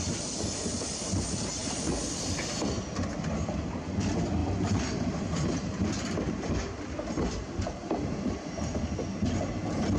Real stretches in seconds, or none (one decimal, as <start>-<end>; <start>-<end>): 0.0-4.4; 6.5-7.8; 8.8-10.0